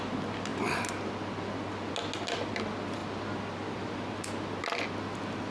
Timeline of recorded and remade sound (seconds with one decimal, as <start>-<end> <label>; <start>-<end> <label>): 0.0-5.5 recorded